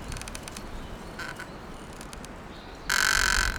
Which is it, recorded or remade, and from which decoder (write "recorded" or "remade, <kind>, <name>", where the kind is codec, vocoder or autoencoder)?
recorded